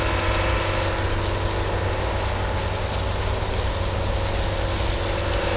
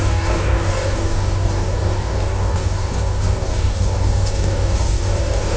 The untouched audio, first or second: first